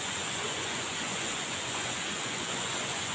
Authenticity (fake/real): fake